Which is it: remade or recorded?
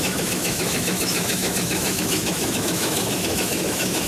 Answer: remade